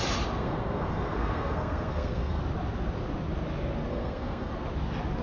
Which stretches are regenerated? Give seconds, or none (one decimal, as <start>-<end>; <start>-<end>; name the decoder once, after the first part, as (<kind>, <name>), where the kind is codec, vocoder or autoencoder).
0.4-2.4 (codec, SNAC); 3.9-4.5